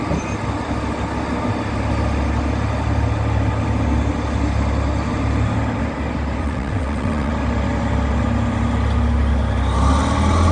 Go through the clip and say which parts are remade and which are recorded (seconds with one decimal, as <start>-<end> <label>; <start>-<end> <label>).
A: 0.0-6.4 recorded; 6.4-7.3 remade; 7.3-10.5 recorded